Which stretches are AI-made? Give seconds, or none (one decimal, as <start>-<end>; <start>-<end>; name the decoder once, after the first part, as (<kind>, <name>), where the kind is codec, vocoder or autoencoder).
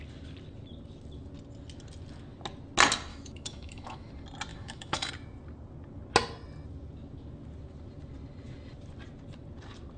3.1-4.1 (autoencoder, DAC-VAE); 4.5-5.1